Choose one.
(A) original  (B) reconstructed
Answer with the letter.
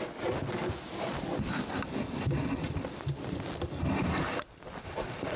A